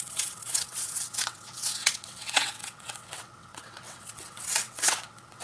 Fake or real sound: fake